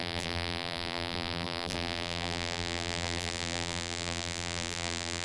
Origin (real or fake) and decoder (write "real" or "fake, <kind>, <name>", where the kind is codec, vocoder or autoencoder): fake, vocoder, BigVGAN v2